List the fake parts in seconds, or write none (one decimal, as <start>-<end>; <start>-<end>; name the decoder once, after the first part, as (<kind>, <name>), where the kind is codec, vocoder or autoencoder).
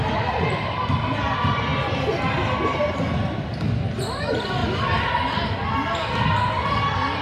none